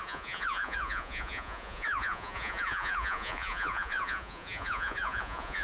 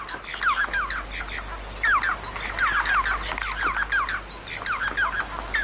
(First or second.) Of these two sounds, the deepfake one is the first